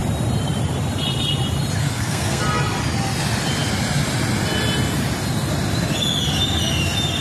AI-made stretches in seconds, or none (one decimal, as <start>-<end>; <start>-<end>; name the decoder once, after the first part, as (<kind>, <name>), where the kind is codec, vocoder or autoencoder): 1.8-2.4 (codec, SNAC)